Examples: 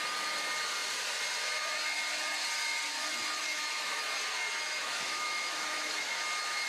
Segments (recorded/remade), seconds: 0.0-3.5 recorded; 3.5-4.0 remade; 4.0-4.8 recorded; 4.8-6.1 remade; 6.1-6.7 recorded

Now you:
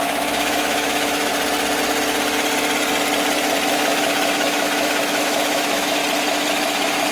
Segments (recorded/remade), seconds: 0.0-1.3 remade; 1.3-3.7 recorded; 3.7-6.0 remade; 6.0-6.5 recorded; 6.5-7.1 remade

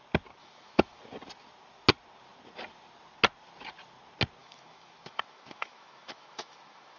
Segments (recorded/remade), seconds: 0.0-0.4 recorded; 0.4-1.0 remade; 1.0-4.4 recorded; 4.4-7.0 remade